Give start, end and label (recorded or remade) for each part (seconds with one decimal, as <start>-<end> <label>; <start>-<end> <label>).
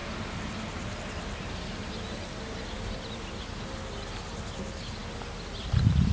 0.0-6.1 recorded